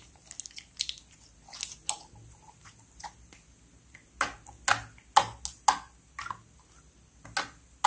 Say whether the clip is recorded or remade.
recorded